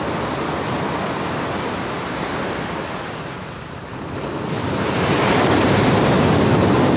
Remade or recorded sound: recorded